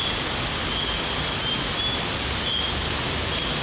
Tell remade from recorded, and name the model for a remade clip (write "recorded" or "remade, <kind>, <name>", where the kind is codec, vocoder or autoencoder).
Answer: recorded